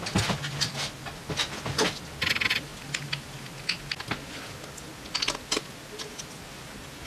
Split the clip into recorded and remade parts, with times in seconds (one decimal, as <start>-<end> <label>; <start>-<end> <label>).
0.0-7.1 recorded